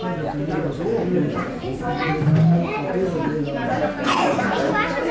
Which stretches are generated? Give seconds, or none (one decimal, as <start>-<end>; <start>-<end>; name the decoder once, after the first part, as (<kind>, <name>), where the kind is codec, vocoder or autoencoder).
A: 1.5-2.1 (codec, SNAC)